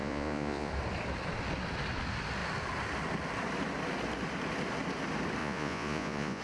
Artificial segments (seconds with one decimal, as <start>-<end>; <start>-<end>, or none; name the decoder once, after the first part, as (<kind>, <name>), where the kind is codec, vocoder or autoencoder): 0.0-0.7 (vocoder, Vocos); 5.4-6.4